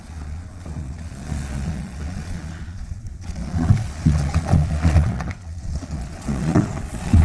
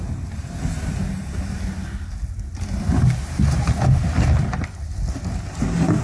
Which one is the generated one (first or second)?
first